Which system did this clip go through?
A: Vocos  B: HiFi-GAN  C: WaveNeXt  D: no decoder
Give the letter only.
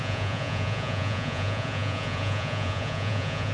A